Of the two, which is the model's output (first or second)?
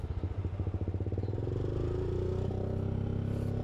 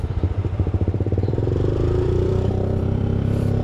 second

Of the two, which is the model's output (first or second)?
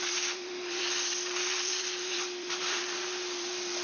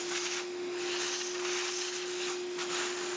first